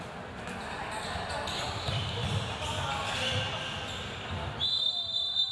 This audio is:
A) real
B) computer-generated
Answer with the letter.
A